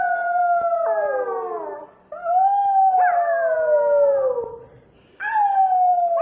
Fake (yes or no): no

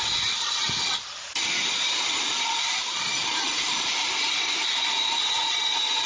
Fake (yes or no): no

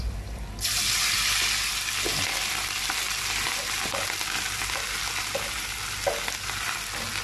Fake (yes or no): no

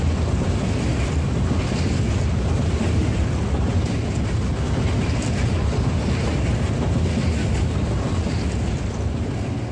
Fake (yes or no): no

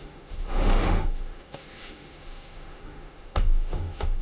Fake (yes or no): yes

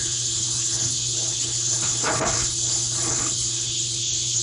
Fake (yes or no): yes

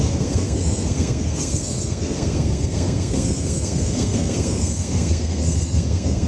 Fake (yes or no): yes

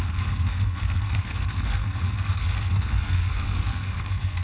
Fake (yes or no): yes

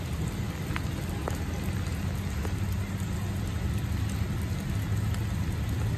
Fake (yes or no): no